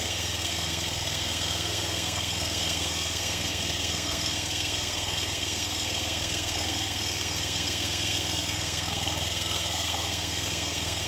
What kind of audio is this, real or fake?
fake